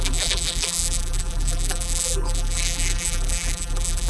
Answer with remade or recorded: remade